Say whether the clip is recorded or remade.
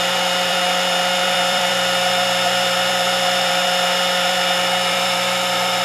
remade